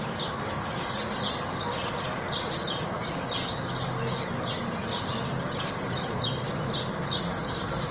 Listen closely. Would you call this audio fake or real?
real